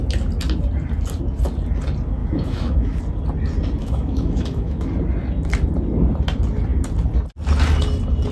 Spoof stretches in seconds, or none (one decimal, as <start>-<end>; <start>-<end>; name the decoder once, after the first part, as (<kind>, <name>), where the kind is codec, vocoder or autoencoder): 2.2-3.0 (autoencoder, DAC-VAE); 3.8-4.9

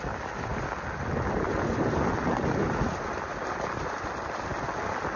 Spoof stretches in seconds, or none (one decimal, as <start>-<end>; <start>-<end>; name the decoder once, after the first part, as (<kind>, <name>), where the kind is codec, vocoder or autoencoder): none

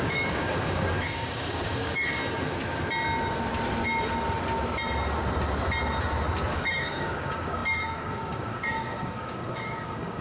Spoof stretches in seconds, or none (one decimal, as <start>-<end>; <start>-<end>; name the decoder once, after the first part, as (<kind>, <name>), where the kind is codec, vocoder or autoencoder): 0.0-2.2 (codec, DAC); 6.5-10.2